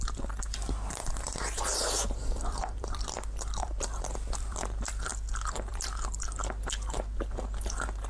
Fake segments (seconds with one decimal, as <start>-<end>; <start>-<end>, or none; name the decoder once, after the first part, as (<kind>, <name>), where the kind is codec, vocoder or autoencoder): 1.7-4.6 (vocoder, BigVGAN v2)

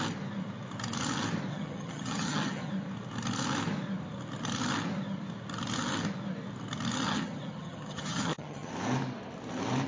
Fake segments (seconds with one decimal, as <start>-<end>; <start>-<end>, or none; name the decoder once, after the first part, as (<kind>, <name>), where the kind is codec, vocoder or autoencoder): 1.5-2.7 (vocoder, HiFi-GAN); 7.1-8.7

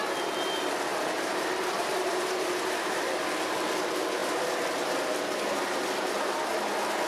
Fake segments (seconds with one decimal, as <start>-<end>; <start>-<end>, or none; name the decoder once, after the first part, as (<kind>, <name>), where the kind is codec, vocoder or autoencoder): 0.9-3.3 (vocoder, BigVGAN v2)

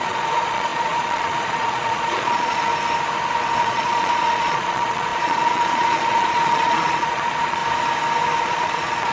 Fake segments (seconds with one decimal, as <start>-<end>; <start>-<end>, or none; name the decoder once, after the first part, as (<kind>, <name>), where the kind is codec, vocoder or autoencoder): 0.0-2.7 (vocoder, Vocos); 3.6-7.6; 8.4-9.1

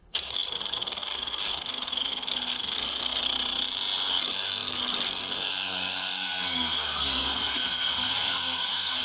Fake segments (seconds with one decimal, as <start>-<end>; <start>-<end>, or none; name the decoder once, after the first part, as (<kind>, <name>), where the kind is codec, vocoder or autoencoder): 0.0-3.2 (codec, SNAC); 4.1-9.0

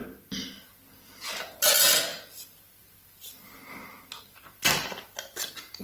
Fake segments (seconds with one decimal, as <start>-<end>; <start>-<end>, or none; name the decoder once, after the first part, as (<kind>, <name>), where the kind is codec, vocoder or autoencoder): none

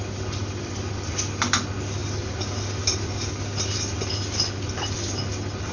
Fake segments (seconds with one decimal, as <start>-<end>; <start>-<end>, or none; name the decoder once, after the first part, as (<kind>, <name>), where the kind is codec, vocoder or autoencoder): none

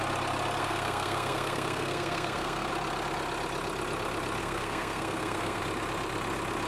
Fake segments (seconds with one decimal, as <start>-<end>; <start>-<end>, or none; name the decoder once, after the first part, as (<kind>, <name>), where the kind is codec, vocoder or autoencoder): 0.6-2.7 (codec, SNAC); 4.4-5.6